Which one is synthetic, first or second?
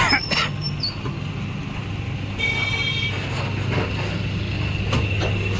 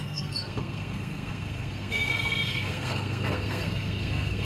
second